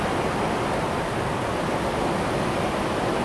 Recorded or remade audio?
recorded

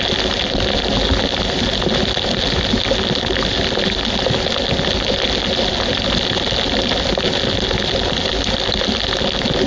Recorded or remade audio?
recorded